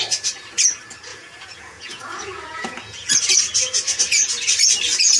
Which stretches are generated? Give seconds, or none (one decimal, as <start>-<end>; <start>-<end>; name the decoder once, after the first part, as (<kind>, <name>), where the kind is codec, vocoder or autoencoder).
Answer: 1.1-3.2 (vocoder, Vocos)